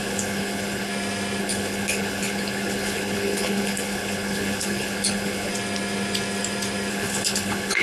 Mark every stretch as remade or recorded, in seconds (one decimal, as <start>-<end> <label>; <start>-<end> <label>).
0.0-0.9 remade; 0.9-1.4 recorded; 1.4-5.5 remade; 5.5-6.9 recorded; 6.9-7.8 remade